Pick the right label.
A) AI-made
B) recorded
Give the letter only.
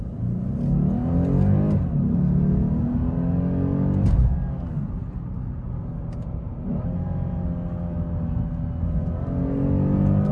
B